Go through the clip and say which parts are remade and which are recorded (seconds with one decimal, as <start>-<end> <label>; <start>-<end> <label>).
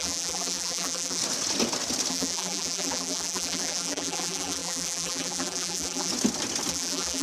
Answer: 0.0-1.2 remade; 1.2-2.1 recorded; 2.1-6.1 remade; 6.1-6.7 recorded; 6.7-7.2 remade